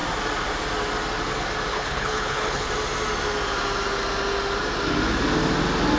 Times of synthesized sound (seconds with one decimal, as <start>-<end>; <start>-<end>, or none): 1.7-2.7